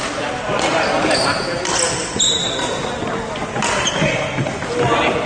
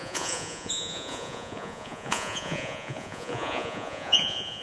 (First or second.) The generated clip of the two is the second